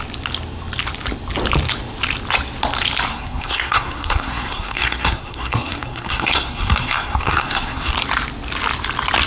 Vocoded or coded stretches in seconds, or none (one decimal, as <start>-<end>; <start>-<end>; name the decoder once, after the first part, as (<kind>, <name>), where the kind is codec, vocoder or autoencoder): 3.1-7.9 (codec, SNAC)